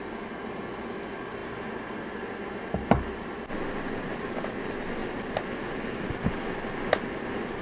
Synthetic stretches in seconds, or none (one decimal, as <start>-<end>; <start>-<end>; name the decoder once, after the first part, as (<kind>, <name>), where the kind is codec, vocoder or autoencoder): none